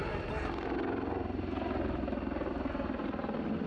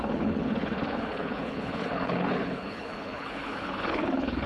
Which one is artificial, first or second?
second